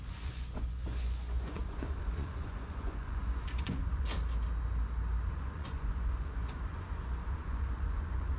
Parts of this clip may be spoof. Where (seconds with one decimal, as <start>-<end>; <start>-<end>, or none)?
0.0-4.1; 5.3-8.4